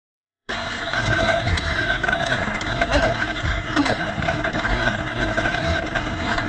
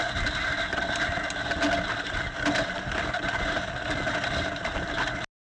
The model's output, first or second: first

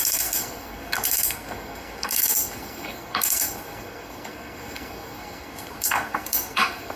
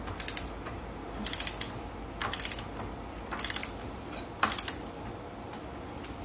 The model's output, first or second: first